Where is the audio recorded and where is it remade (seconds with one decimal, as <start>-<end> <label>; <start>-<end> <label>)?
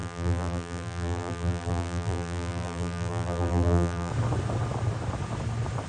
0.0-4.1 remade; 4.1-5.9 recorded